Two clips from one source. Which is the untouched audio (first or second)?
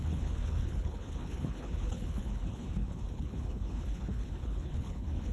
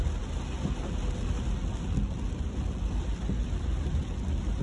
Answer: second